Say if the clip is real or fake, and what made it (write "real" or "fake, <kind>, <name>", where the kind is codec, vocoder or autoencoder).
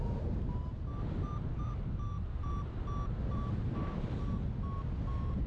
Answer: real